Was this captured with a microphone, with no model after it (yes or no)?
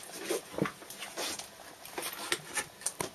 yes